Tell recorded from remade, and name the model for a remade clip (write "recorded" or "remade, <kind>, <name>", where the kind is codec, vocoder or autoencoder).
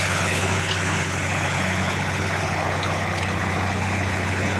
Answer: remade, codec, HILCodec